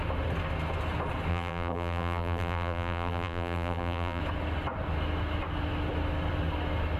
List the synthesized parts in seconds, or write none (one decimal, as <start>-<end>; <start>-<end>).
1.3-4.2